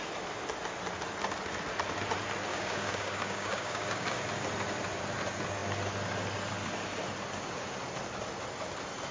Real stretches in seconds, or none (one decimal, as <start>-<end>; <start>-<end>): 0.0-2.5; 4.2-9.1